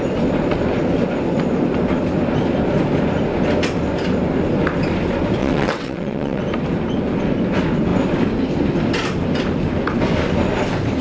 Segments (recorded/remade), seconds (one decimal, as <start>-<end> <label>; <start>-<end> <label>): 0.0-5.4 recorded; 5.4-6.4 remade; 6.4-11.0 recorded

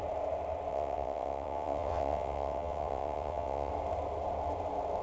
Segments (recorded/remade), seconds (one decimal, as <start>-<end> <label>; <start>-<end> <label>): 0.0-0.7 recorded; 0.7-3.7 remade; 3.7-5.0 recorded

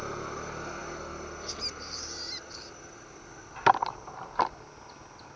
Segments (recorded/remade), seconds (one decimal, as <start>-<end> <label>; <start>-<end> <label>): 0.0-5.4 recorded